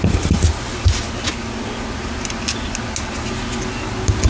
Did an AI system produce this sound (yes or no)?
no